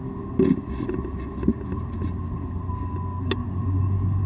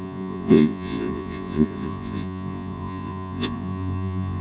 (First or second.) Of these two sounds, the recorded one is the first